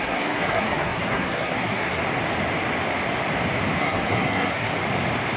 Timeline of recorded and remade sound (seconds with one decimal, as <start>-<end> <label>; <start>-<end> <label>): 0.0-2.0 remade; 2.0-3.8 recorded; 3.8-4.7 remade; 4.7-5.4 recorded